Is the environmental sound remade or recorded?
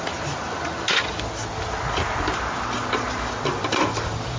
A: recorded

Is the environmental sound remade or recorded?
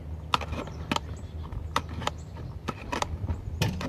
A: recorded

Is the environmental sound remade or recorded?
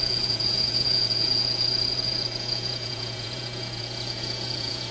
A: remade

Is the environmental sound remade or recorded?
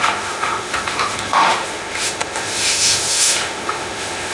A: remade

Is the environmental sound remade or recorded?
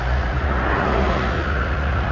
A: remade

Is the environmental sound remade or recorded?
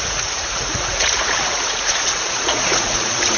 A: remade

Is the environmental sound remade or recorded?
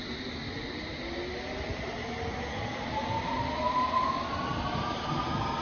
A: recorded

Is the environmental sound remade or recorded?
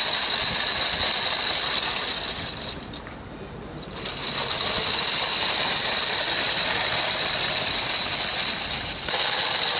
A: recorded